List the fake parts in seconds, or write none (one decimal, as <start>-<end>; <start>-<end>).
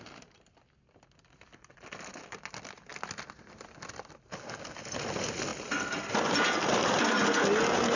none